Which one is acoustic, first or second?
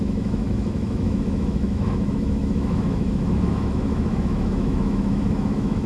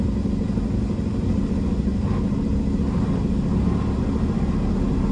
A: second